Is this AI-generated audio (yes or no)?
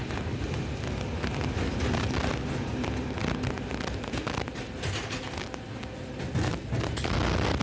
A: no